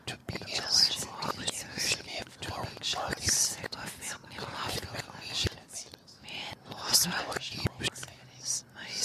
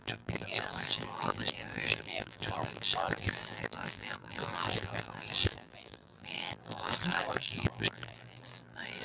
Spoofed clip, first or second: second